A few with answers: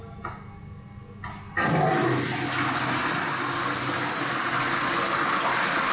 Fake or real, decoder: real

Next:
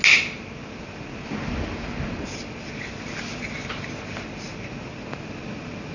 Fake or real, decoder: real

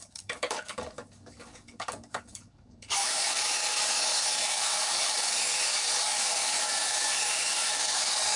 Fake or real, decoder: fake, codec, DAC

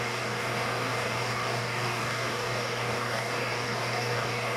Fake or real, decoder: fake, codec, DAC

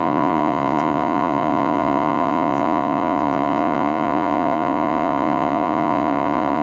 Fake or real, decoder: fake, vocoder, Vocos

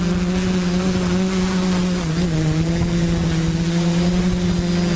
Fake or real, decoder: real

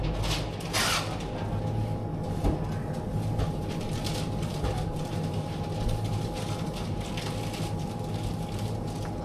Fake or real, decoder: real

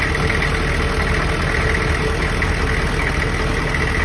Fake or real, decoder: real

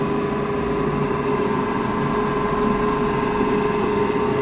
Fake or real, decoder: real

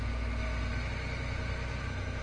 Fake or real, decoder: real